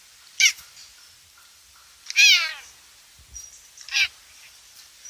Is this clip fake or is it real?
real